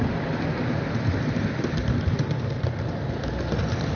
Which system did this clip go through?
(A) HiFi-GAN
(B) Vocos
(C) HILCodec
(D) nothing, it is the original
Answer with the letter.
D